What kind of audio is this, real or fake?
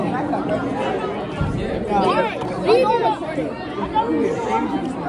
real